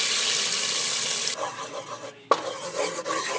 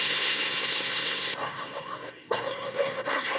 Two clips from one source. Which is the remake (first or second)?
second